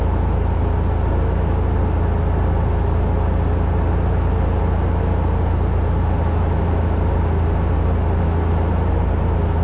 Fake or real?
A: real